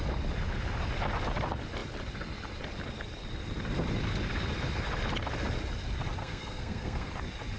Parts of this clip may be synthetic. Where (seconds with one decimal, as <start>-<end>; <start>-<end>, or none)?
6.2-7.1